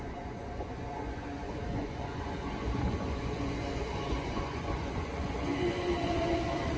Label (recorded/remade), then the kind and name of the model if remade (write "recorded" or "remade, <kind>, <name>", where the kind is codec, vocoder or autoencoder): remade, vocoder, Vocos